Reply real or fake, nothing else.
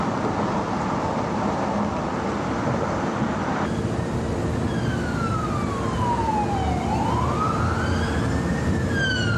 real